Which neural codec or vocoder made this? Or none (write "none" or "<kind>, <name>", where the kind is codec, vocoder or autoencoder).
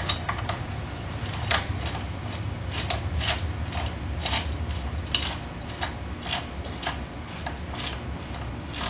none